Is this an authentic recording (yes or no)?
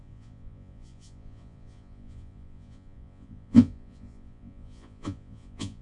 no